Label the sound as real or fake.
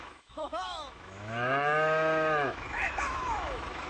fake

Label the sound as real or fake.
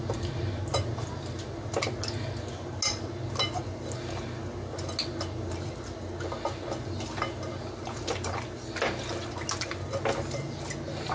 real